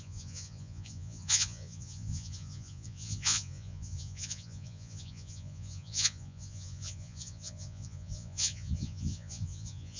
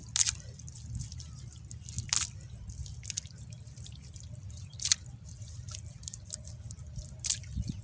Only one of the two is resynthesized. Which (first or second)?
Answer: first